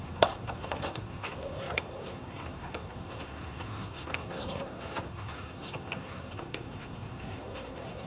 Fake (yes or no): yes